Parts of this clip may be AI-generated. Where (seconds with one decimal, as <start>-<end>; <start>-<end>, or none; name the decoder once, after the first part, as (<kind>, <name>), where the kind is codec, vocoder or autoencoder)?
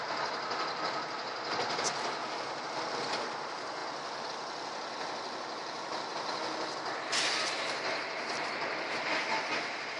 none